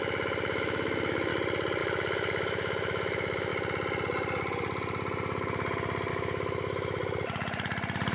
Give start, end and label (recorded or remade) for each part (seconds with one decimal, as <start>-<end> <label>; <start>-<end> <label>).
0.0-1.3 remade; 1.3-1.8 recorded; 1.8-3.5 remade; 3.5-6.1 recorded; 6.1-7.0 remade; 7.0-8.1 recorded